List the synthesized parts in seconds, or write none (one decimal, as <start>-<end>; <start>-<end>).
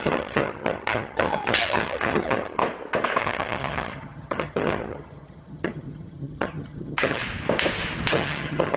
0.0-2.6; 3.2-7.2; 8.1-8.8